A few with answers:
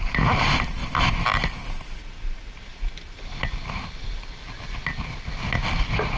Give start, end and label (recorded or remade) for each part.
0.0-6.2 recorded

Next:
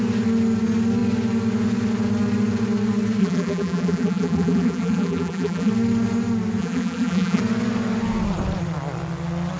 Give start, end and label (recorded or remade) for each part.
0.0-3.2 recorded; 3.2-5.7 remade; 5.7-6.6 recorded; 6.6-7.4 remade; 7.4-9.6 recorded